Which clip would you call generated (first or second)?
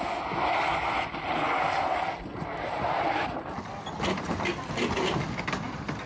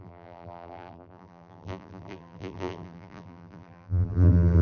second